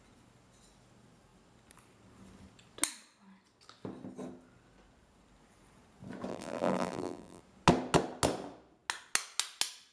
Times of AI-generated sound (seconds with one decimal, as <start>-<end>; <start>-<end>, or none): 6.3-7.4